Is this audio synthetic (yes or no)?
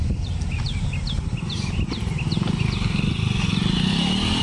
no